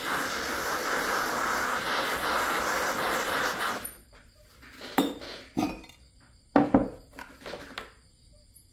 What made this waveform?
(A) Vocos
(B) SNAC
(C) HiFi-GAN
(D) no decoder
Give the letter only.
D